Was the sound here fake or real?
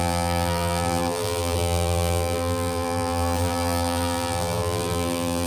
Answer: fake